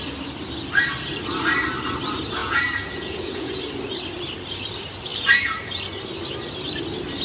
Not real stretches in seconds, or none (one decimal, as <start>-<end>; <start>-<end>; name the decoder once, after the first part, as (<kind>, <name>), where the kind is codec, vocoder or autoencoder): 2.4-3.6 (vocoder, Vocos); 5.1-5.6